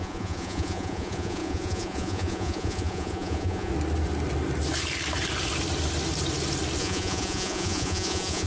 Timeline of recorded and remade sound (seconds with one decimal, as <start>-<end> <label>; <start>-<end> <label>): 0.0-3.7 remade; 3.7-6.8 recorded; 6.8-8.5 remade